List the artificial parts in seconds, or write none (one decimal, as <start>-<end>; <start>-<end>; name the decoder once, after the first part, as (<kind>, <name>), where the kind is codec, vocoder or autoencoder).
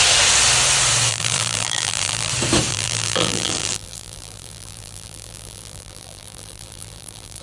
1.1-2.3 (vocoder, BigVGAN v2); 2.7-7.4